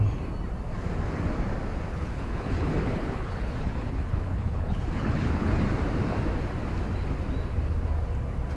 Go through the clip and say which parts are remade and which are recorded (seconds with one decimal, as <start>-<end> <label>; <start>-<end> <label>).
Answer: 0.0-1.9 recorded; 1.9-5.6 remade; 5.6-8.6 recorded